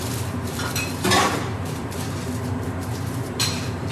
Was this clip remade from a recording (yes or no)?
yes